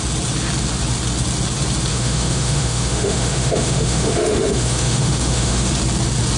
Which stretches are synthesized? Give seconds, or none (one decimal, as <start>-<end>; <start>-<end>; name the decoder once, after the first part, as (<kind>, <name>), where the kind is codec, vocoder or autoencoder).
1.9-5.7 (autoencoder, DAC-VAE)